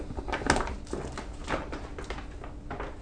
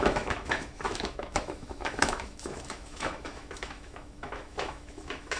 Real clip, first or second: first